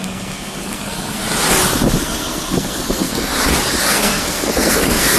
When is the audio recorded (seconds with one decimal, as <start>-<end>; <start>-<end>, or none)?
1.2-2.0; 3.3-3.8